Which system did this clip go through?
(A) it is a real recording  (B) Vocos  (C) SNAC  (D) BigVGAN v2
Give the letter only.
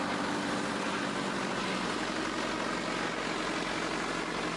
A